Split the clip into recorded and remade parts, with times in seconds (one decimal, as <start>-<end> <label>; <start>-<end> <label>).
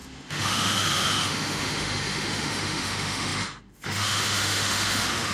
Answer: 0.0-5.3 remade